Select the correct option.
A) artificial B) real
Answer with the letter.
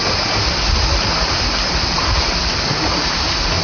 B